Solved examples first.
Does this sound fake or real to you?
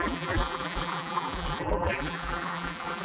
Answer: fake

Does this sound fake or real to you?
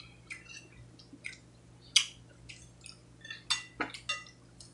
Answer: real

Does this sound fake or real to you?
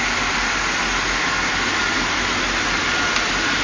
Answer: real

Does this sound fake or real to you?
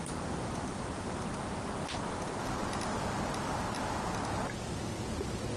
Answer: real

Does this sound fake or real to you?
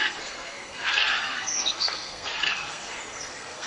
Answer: fake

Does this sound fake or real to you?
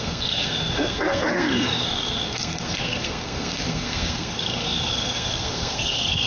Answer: fake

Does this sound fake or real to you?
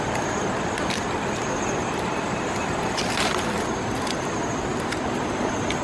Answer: real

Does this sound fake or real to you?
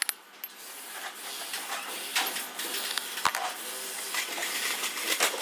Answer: real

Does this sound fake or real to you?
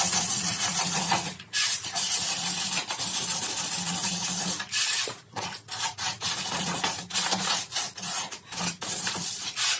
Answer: fake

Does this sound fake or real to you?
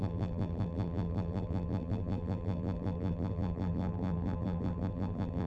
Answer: fake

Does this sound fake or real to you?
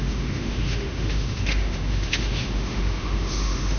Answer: fake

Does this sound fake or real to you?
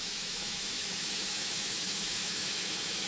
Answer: fake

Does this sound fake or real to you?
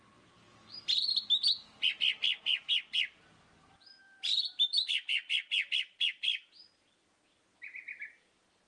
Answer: real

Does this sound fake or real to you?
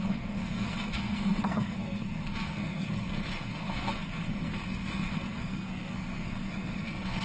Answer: fake